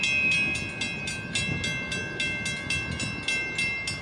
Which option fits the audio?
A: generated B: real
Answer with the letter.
B